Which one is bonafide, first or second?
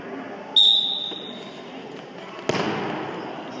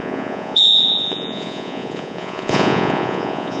first